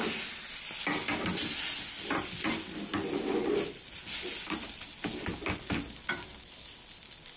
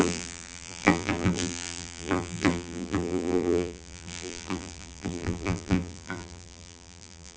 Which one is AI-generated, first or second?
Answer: second